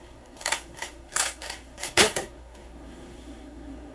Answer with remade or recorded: remade